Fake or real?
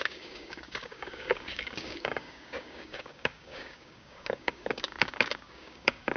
fake